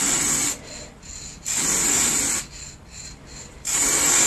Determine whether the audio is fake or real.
real